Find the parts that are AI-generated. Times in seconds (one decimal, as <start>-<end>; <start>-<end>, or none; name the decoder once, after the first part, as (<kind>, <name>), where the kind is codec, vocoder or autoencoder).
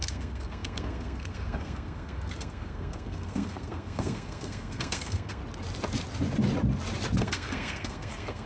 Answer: 0.0-5.4 (codec, SNAC); 7.2-8.5